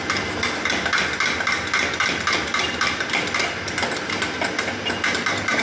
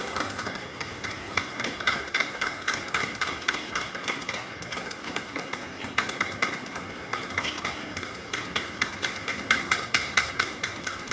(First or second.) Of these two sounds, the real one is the first